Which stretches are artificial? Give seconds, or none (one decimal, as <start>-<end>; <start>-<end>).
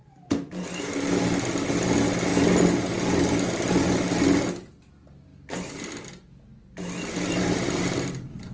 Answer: none